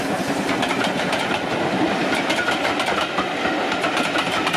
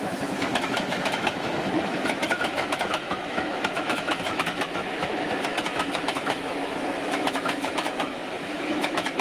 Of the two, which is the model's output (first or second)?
second